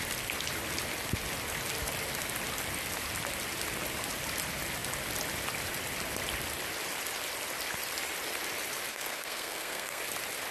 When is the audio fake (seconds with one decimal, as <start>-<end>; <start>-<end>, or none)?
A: 8.9-10.0